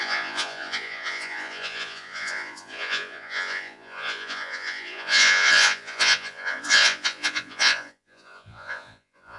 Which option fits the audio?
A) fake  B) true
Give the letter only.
A